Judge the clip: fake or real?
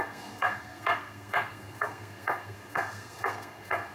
fake